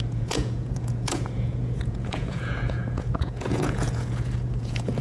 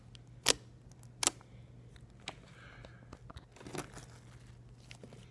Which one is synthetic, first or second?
first